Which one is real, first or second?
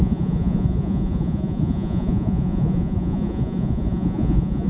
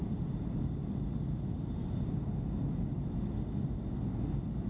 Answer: second